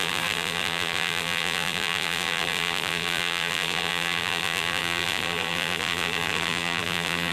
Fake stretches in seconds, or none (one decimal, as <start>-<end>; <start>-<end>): 0.0-7.3